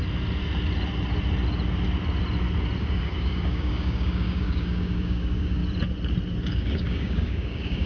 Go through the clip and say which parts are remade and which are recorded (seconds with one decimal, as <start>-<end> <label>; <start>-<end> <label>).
0.0-2.8 recorded; 2.8-5.6 remade; 5.6-6.5 recorded; 6.5-7.9 remade